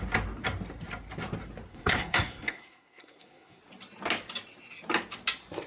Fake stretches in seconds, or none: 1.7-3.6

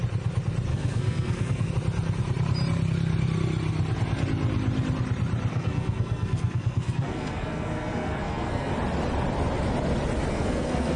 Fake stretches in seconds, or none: 0.7-1.7; 5.5-8.7; 10.3-11.0

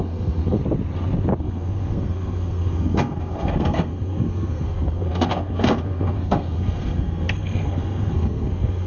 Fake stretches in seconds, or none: 0.0-0.6; 1.4-8.9